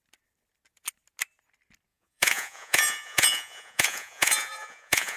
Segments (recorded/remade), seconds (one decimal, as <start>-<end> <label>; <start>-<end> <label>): 0.0-1.9 recorded; 1.9-5.2 remade